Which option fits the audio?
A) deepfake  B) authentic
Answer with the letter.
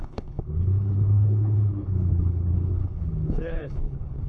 A